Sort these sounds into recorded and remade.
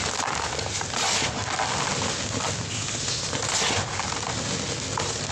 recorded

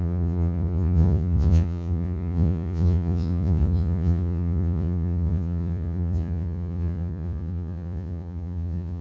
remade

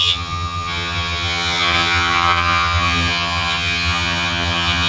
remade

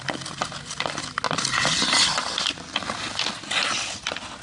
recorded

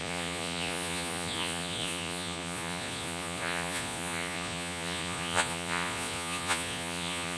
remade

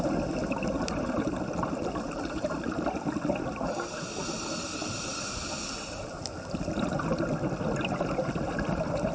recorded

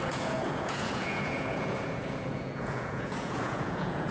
remade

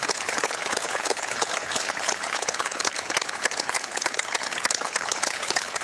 remade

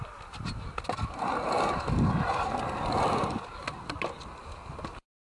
recorded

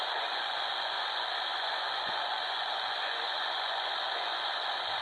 remade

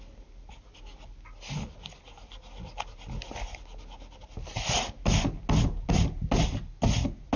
recorded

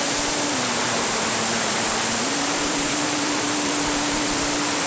remade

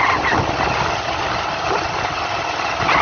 recorded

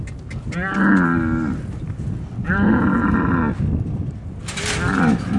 recorded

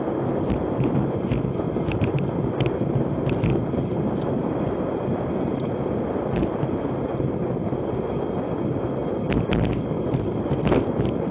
recorded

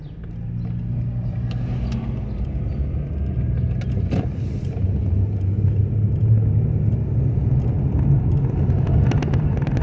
recorded